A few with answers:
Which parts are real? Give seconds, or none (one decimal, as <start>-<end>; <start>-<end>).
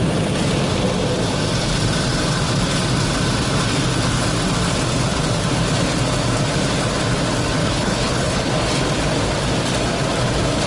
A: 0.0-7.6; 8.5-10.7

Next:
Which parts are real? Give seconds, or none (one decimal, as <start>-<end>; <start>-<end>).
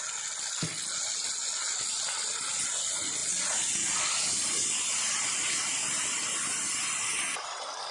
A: 0.0-7.9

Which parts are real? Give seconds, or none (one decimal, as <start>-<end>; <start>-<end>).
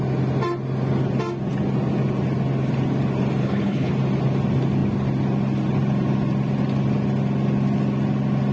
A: 0.0-3.4; 3.9-8.5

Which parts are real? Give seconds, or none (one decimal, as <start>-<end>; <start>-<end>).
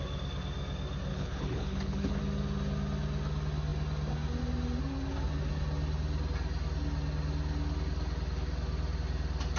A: 0.0-1.1; 2.2-9.6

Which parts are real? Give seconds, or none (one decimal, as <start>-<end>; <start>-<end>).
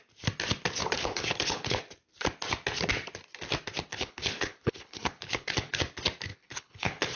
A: 0.0-0.8; 1.8-3.9; 5.8-6.3